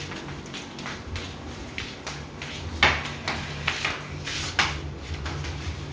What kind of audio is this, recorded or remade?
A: recorded